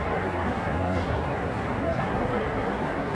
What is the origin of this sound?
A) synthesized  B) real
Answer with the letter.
A